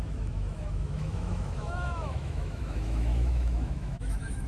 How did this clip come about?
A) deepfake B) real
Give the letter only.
A